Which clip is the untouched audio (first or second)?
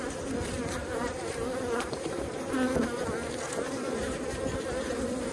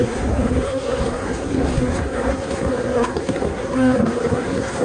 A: first